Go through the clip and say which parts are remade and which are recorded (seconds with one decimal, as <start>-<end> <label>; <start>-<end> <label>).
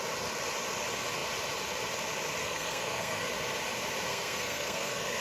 0.0-2.4 recorded; 2.4-3.3 remade; 3.3-4.1 recorded; 4.1-5.2 remade